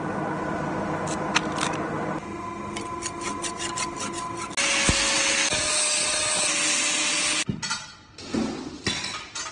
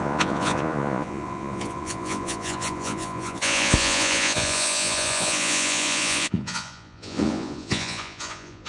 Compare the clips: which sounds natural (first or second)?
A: first